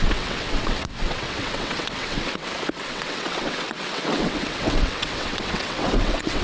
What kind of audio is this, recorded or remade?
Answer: remade